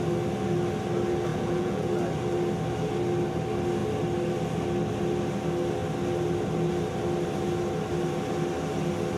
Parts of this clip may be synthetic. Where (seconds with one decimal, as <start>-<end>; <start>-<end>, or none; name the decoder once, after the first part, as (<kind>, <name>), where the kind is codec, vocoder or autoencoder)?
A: 1.3-1.9 (vocoder, Vocos)